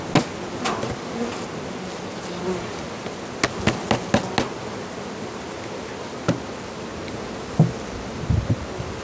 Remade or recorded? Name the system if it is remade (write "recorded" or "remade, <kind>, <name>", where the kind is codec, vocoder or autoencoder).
recorded